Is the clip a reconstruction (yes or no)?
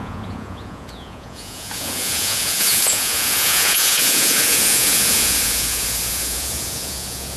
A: yes